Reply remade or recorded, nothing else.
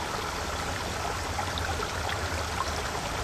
recorded